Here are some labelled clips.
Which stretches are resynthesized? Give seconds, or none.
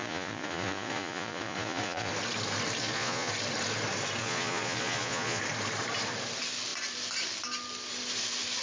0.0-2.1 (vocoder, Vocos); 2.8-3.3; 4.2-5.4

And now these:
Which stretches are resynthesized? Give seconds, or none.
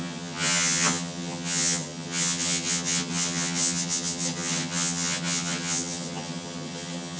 0.0-7.2 (vocoder, HiFi-GAN)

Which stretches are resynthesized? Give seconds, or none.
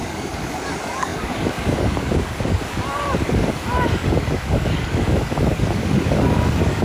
0.0-6.8 (codec, DAC)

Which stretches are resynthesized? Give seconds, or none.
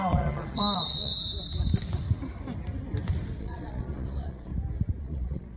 0.0-1.1 (vocoder, Vocos); 3.4-4.5; 5.0-5.6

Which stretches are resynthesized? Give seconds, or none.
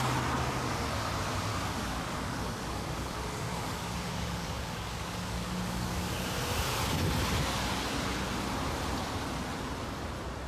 1.5-6.2 (codec, DAC)